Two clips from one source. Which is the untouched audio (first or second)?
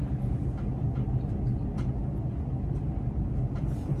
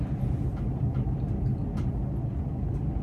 first